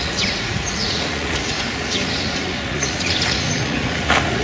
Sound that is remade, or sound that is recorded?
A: remade